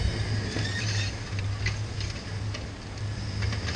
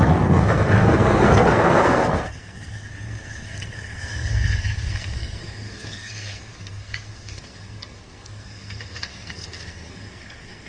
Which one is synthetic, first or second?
second